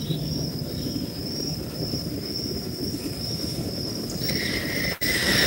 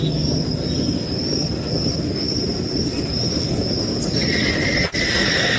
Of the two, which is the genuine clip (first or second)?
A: second